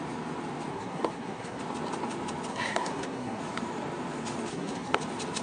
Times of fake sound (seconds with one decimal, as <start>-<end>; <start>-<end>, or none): 0.7-1.6; 2.5-3.4; 4.5-5.0